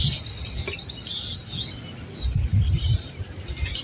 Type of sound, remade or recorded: recorded